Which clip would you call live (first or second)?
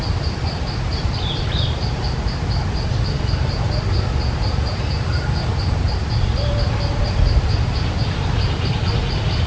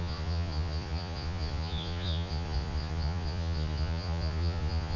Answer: first